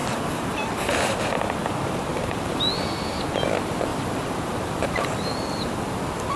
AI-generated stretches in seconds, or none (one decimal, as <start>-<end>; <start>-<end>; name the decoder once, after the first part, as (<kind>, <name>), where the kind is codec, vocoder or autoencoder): 0.0-0.8 (vocoder, BigVGAN v2); 2.1-2.6; 3.9-5.4